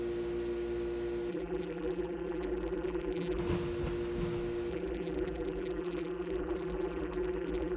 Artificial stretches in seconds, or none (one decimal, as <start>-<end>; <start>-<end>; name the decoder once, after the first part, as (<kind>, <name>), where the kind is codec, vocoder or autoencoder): 1.3-3.4 (vocoder, BigVGAN v2); 4.7-7.8